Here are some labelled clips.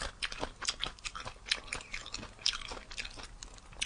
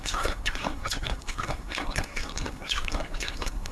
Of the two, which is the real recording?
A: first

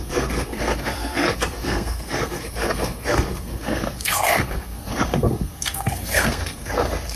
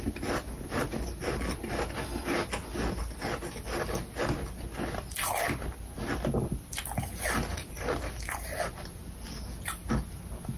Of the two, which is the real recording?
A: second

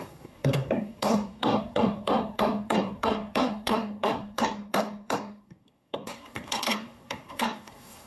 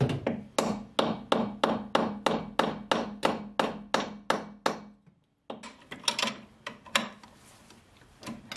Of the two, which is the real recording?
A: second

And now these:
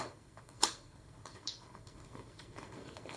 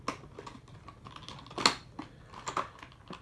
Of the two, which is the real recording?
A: second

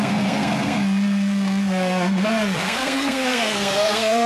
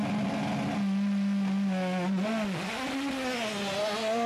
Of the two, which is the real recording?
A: second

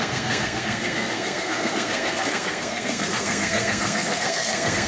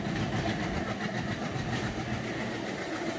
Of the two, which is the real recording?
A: second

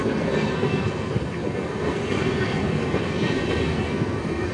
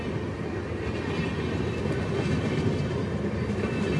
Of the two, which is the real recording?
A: second